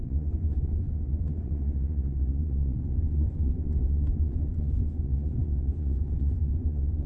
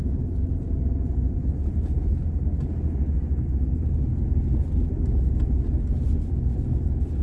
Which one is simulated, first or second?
first